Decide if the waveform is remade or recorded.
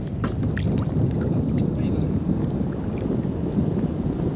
recorded